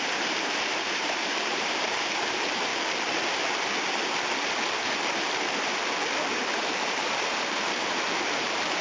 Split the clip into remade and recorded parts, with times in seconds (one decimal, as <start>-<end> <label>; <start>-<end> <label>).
0.0-2.7 remade; 2.7-5.3 recorded; 5.3-5.8 remade; 5.8-6.3 recorded; 6.3-8.8 remade